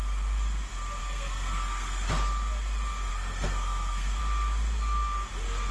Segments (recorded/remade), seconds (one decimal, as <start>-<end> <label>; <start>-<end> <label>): 0.0-1.0 recorded; 1.0-2.1 remade; 2.1-3.1 recorded; 3.1-4.2 remade; 4.2-5.7 recorded